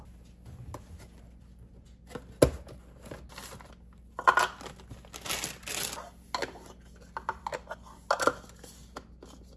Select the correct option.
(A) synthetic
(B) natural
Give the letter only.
B